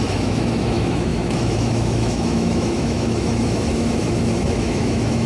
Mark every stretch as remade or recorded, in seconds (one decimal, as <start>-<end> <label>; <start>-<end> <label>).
0.0-5.3 remade